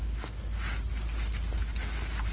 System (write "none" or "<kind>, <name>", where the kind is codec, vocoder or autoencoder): none